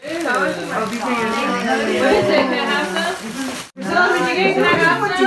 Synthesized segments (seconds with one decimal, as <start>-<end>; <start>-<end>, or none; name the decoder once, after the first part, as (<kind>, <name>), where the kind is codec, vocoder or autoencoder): 3.2-5.3 (vocoder, BigVGAN v2)